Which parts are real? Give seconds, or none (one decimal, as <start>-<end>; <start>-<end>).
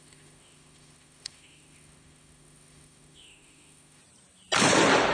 4.0-5.1